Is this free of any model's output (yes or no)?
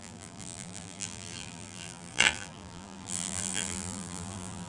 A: no